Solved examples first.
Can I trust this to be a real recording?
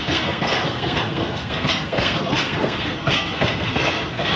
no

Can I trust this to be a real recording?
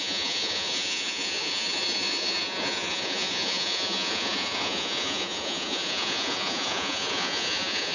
no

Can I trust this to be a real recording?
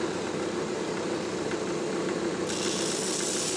yes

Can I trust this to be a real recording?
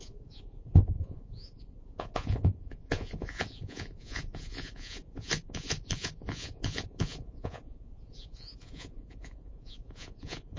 no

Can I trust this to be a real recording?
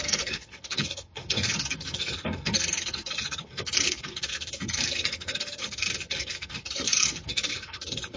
no